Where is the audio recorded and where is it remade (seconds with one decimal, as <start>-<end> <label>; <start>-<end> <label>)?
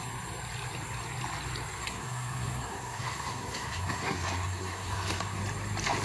0.0-1.8 recorded; 1.8-5.4 remade; 5.4-6.0 recorded